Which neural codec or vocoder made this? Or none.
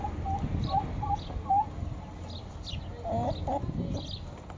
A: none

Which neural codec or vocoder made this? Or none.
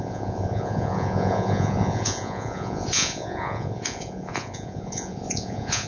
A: vocoder, Vocos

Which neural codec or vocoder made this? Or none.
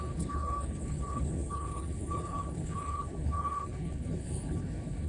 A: codec, HILCodec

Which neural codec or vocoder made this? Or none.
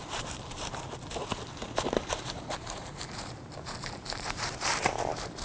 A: vocoder, BigVGAN v2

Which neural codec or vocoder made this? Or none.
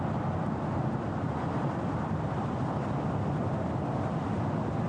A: vocoder, BigVGAN v2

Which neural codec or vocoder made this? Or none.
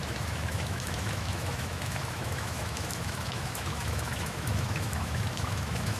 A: autoencoder, DAC-VAE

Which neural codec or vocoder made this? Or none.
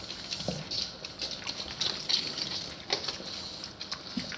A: none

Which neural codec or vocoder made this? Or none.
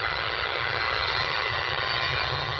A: vocoder, HiFi-GAN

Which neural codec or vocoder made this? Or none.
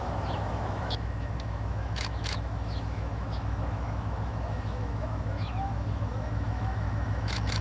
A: autoencoder, DAC-VAE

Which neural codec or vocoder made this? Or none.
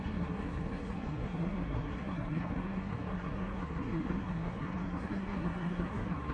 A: codec, SNAC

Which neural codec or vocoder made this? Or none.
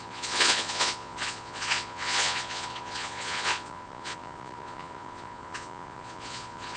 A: vocoder, Vocos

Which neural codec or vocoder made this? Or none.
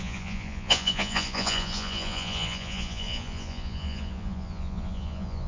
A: vocoder, Vocos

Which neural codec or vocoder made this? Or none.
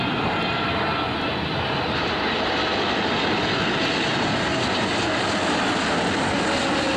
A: none